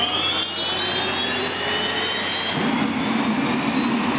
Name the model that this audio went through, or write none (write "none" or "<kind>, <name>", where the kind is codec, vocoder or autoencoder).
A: none